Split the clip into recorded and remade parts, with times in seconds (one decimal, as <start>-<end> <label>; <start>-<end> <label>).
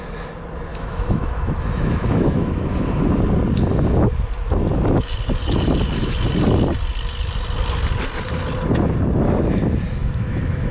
0.0-0.7 recorded; 0.7-3.0 remade; 3.0-10.0 recorded; 10.0-10.7 remade